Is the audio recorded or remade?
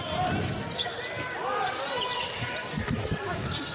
recorded